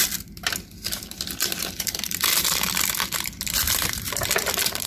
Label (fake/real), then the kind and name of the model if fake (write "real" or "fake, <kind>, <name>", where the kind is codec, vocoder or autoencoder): fake, vocoder, BigVGAN v2